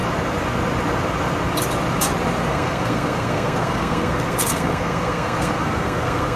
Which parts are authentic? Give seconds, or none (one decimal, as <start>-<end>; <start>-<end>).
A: 0.0-2.5